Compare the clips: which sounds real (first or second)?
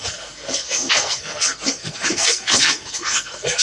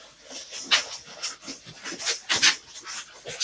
second